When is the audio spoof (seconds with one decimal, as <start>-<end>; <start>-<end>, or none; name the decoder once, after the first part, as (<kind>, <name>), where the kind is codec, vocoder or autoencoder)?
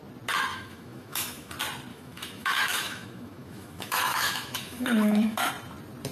0.5-1.5 (autoencoder, DAC-VAE); 1.9-5.5